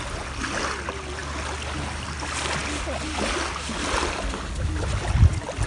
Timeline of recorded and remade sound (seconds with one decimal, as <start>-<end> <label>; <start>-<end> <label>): 0.0-5.7 recorded